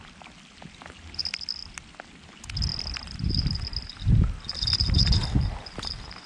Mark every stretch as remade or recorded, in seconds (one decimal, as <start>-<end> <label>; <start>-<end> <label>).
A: 0.0-6.3 recorded